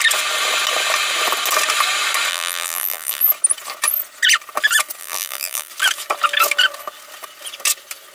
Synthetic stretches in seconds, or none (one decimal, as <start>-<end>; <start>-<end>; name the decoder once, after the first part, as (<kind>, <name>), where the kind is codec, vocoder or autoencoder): 2.3-3.2 (vocoder, BigVGAN v2); 5.0-5.7